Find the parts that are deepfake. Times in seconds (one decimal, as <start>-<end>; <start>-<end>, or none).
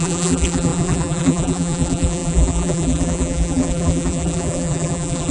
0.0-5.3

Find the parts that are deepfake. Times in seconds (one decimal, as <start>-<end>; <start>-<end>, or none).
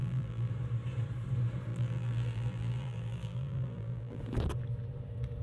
0.0-0.5; 1.7-4.2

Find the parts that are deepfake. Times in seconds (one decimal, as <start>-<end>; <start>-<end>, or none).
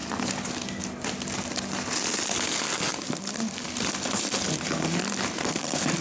0.0-6.0